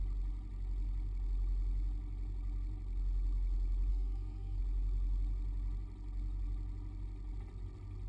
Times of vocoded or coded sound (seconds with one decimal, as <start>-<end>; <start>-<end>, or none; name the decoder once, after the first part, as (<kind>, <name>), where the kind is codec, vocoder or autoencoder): 3.9-4.6 (codec, SNAC)